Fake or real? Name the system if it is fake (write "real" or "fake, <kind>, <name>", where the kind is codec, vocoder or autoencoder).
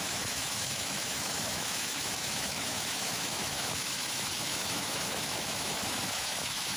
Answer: fake, autoencoder, DAC-VAE